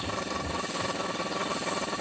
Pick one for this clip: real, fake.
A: real